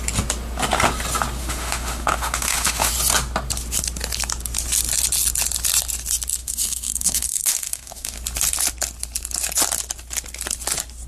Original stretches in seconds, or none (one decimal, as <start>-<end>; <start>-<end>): 0.0-1.4; 2.9-6.4; 8.2-11.1